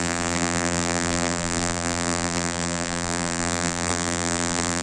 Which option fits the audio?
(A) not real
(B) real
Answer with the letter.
A